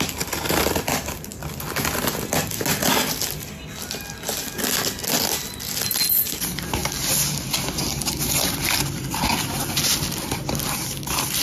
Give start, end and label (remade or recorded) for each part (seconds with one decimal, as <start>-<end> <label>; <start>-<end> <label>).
0.0-11.4 recorded